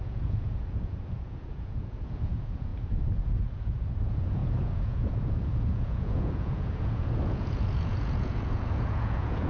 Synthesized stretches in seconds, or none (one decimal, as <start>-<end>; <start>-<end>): 0.0-9.5